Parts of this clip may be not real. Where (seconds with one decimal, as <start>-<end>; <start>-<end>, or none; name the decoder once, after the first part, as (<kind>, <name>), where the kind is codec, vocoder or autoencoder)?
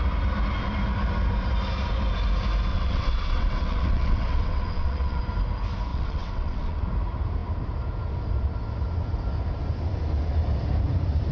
2.7-5.2 (vocoder, WaveNeXt); 5.9-6.8